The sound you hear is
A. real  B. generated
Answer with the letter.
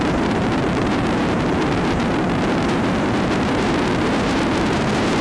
B